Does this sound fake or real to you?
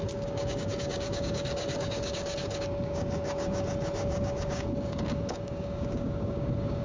fake